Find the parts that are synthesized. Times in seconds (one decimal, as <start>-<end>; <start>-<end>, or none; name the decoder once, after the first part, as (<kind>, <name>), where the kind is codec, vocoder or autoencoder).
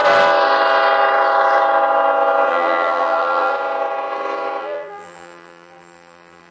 2.5-3.5 (vocoder, BigVGAN v2); 4.6-6.5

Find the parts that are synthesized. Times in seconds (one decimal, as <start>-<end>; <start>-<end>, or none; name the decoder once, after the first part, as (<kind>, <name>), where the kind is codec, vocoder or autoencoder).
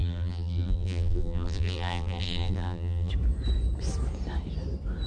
0.0-3.1 (vocoder, BigVGAN v2)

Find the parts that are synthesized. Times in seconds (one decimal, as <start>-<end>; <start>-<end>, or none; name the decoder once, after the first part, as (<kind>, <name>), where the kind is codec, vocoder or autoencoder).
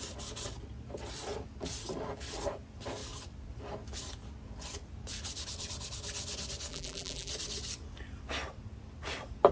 6.7-7.3 (vocoder, BigVGAN v2)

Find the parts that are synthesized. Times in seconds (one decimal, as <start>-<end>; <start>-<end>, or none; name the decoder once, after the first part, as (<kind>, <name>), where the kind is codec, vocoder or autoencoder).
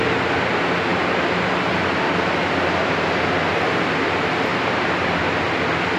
0.9-1.7 (vocoder, BigVGAN v2); 4.5-5.3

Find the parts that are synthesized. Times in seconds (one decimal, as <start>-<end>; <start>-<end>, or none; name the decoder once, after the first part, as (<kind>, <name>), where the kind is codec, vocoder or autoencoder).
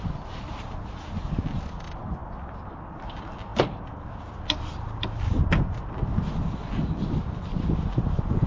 none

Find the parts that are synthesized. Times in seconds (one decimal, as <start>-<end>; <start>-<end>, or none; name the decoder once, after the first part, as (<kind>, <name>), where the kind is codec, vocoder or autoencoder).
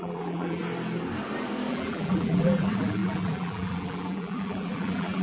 0.0-0.6 (vocoder, BigVGAN v2); 1.7-5.2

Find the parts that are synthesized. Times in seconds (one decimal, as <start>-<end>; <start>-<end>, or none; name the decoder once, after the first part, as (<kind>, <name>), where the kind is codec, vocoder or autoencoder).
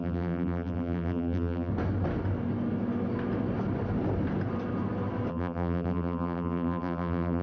0.0-1.7 (vocoder, BigVGAN v2); 5.3-7.4